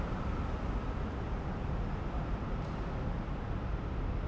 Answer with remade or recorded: recorded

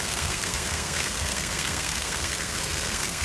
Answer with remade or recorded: remade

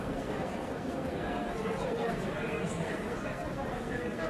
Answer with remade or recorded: remade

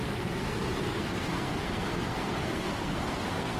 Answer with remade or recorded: remade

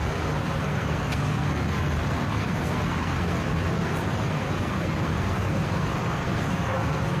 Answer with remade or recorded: remade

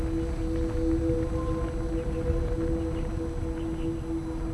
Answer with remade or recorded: recorded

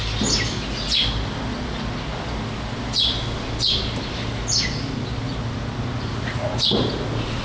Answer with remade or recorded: recorded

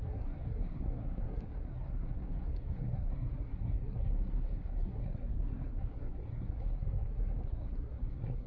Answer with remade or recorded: remade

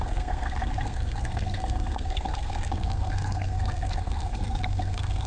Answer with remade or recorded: remade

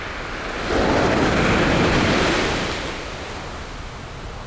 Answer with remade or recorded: recorded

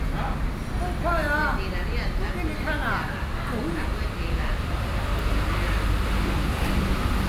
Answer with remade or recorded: recorded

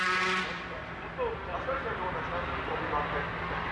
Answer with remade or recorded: recorded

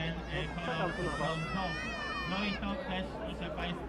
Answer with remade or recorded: recorded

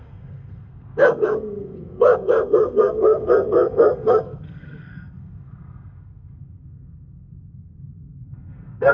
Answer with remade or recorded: remade